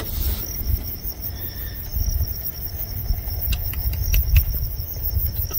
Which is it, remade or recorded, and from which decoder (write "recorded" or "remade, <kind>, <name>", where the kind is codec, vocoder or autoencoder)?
recorded